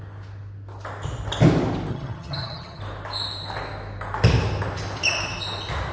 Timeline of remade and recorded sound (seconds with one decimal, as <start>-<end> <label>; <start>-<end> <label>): 0.0-1.9 recorded; 1.9-2.8 remade; 2.8-5.9 recorded